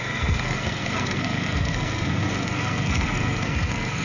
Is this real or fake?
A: fake